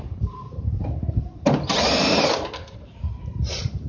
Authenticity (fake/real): fake